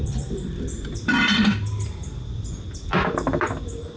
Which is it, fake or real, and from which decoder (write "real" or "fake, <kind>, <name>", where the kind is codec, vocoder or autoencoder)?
fake, vocoder, BigVGAN v2